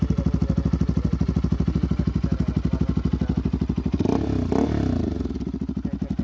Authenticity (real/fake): real